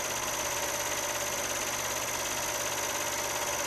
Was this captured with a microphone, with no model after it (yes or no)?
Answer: yes